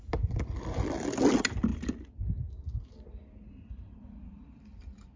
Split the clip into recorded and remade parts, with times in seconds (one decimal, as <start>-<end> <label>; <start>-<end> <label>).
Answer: 0.0-5.2 recorded